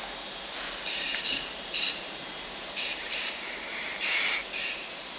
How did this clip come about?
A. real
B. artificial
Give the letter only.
B